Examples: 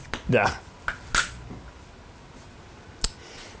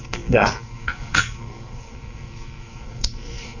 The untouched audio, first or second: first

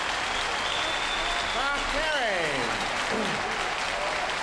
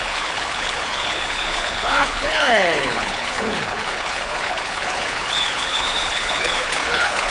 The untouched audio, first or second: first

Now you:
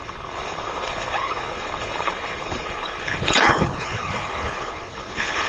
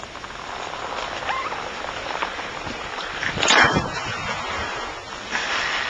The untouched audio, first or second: second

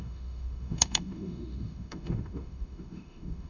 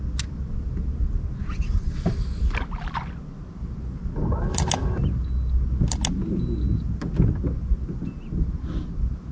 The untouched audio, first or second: second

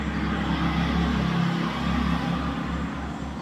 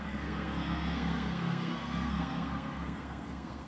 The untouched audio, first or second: first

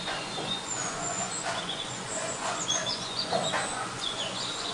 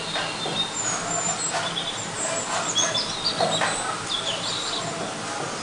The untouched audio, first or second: second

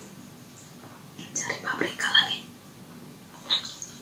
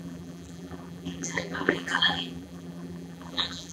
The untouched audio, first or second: first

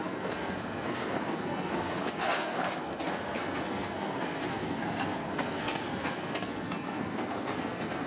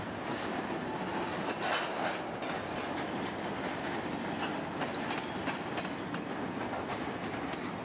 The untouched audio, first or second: second